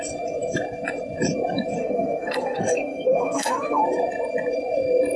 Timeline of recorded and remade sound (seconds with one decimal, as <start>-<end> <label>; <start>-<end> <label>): 0.0-1.8 recorded; 1.8-3.8 remade; 3.8-5.2 recorded